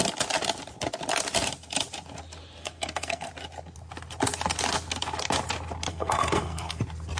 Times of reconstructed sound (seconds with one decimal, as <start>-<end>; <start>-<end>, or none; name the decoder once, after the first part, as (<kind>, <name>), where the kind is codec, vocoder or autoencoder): 2.6-3.3 (codec, SNAC); 5.9-6.8